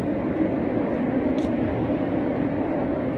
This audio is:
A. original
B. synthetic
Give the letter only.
A